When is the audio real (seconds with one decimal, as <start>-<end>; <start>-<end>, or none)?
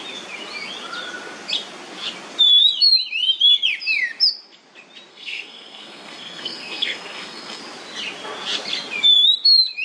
0.0-5.1; 7.6-9.8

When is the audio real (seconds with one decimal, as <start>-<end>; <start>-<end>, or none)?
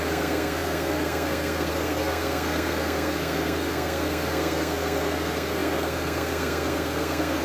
none